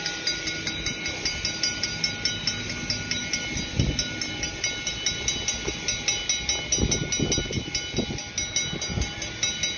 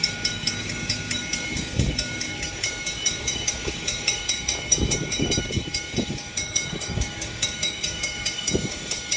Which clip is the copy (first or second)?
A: second